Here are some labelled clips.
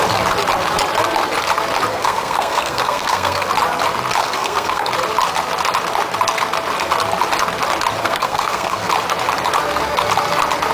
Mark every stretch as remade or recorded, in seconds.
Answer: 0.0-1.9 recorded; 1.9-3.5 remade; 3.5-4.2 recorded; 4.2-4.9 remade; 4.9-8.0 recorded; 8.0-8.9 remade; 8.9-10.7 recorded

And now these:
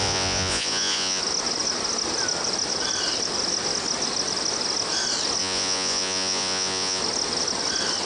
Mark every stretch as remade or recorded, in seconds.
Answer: 0.0-1.2 remade; 1.2-5.4 recorded; 5.4-7.0 remade; 7.0-8.1 recorded